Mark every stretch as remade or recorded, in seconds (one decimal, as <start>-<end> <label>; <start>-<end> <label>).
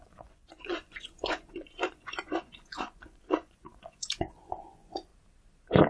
0.0-5.1 remade; 5.1-5.9 recorded